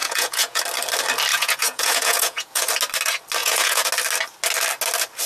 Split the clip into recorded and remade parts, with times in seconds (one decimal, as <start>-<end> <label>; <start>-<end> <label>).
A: 0.0-0.6 remade; 0.6-1.3 recorded; 1.3-2.7 remade; 2.7-3.4 recorded; 3.4-3.9 remade; 3.9-5.3 recorded